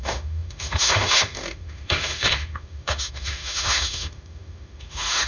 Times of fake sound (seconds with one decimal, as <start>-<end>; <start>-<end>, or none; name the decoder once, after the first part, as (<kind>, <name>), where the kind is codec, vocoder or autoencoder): 0.0-5.3 (autoencoder, DAC-VAE)